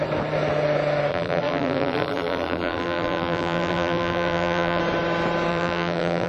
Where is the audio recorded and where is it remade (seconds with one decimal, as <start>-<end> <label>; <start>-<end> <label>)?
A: 0.0-1.1 recorded; 1.1-4.8 remade; 4.8-5.5 recorded; 5.5-6.3 remade